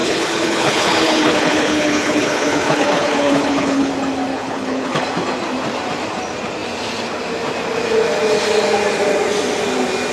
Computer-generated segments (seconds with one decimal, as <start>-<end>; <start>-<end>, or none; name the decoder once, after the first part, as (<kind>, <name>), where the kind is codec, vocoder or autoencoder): 0.0-3.9 (codec, HILCodec); 4.3-5.0